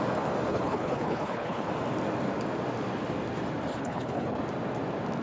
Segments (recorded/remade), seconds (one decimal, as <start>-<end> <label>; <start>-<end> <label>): 0.0-0.5 recorded; 0.5-1.7 remade; 1.7-3.7 recorded; 3.7-4.4 remade; 4.4-5.2 recorded